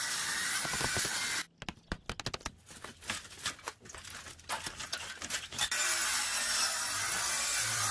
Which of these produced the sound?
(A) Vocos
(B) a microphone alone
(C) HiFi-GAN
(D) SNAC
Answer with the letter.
B